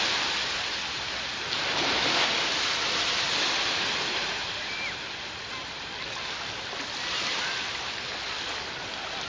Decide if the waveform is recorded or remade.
recorded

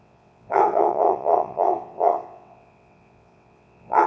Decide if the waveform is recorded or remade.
remade